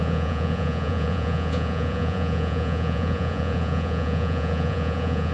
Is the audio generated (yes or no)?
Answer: yes